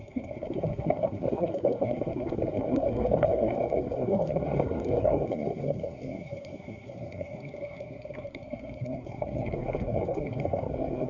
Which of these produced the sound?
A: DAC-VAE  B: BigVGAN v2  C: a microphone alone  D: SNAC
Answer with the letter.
D